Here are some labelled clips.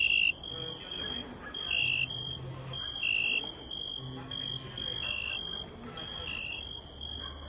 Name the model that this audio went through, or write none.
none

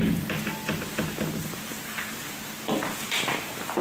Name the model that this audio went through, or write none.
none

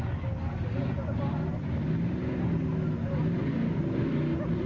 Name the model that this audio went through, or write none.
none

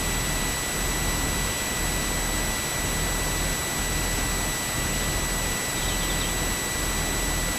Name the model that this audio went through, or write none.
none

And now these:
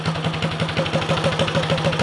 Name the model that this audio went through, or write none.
none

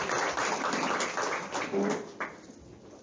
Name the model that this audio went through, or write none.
none